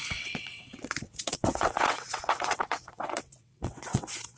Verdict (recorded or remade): remade